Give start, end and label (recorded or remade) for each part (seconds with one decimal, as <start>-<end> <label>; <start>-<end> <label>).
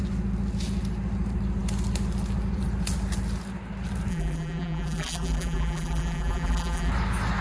0.0-4.1 recorded; 4.1-6.9 remade; 6.9-7.4 recorded